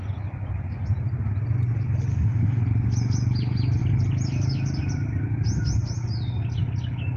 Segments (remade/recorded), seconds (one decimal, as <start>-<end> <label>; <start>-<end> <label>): 0.0-2.1 recorded; 2.1-2.6 remade; 2.6-7.2 recorded